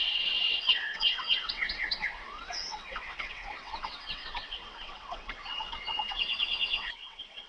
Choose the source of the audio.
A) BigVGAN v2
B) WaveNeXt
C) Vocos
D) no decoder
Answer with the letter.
B